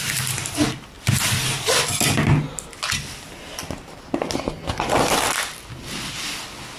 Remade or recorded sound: recorded